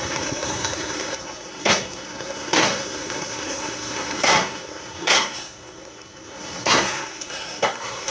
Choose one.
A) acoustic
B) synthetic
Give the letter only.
B